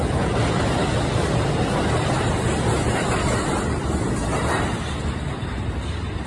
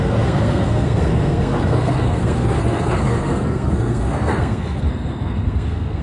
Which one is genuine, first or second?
first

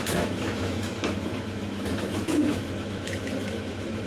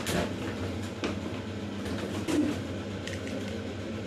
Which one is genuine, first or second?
second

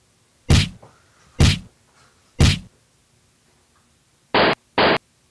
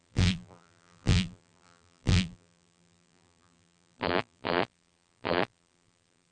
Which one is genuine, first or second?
first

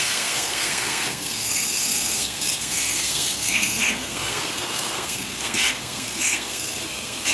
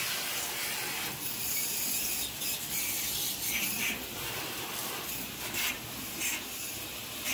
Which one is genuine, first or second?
second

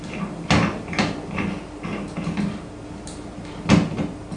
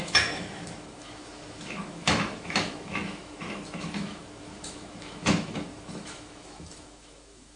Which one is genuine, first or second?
first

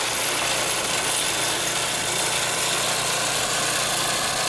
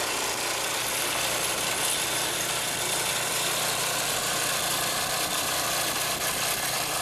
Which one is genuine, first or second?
first